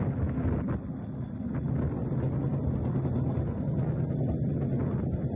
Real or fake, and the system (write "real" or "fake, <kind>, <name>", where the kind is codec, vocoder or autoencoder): real